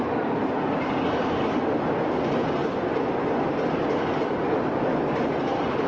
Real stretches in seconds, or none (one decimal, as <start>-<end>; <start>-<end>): 0.0-2.6

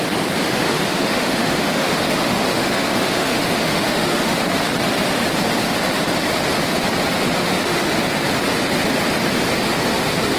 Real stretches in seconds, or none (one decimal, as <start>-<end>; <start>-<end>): 0.0-0.4; 4.5-7.4; 7.9-10.4

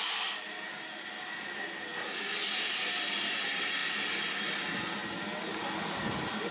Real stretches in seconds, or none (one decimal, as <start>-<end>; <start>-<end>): 0.0-6.5